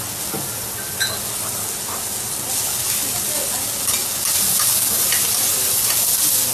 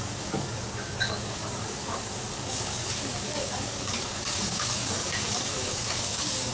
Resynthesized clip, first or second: second